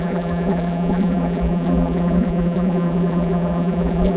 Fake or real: fake